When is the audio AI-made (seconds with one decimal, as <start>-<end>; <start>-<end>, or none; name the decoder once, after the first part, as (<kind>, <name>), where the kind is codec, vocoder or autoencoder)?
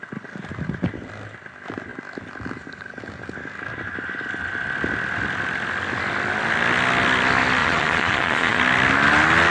7.6-8.6 (vocoder, Vocos)